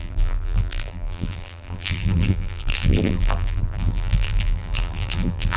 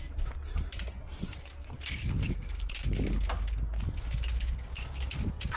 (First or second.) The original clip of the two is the second